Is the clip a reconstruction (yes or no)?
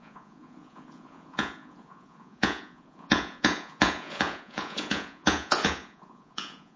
yes